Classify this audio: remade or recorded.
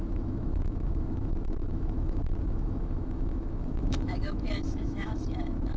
remade